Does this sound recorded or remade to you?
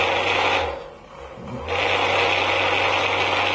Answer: recorded